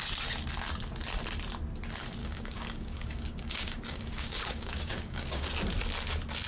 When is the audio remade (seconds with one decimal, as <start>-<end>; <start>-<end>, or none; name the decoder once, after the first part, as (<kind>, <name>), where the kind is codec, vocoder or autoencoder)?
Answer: 2.2-5.5 (codec, DAC)